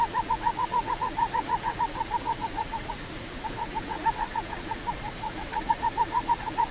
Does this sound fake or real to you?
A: fake